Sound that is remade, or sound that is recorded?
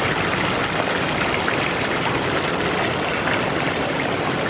recorded